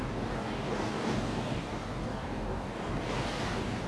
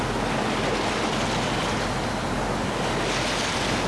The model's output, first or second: first